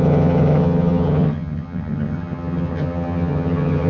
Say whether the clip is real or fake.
fake